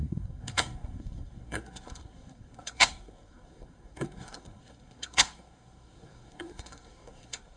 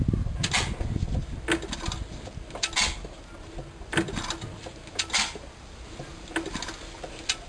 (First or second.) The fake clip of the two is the first